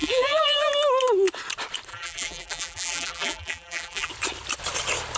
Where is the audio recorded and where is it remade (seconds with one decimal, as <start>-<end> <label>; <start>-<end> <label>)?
0.0-0.7 remade; 0.7-1.9 recorded; 1.9-4.1 remade; 4.1-5.2 recorded